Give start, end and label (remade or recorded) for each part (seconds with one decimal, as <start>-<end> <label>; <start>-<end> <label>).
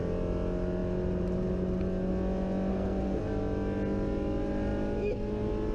0.0-2.7 recorded; 2.7-3.2 remade; 3.2-5.7 recorded